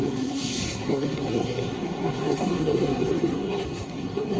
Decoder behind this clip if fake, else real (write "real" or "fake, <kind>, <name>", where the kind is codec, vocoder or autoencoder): fake, codec, SNAC